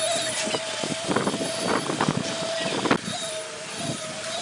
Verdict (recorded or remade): recorded